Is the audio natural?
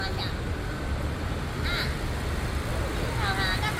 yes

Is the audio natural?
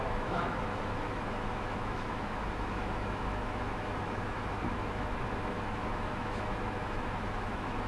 no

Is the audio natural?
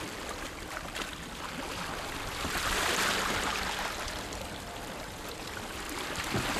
yes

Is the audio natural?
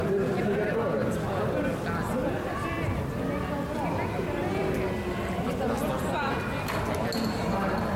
yes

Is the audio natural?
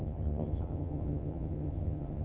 no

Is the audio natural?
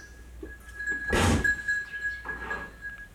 yes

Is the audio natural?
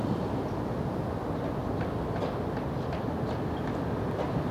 yes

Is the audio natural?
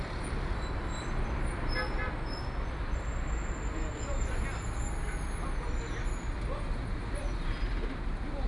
yes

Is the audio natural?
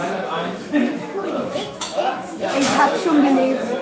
no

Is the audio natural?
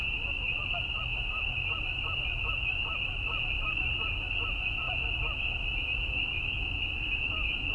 yes